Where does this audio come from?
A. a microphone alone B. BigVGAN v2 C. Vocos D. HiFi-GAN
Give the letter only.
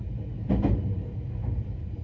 A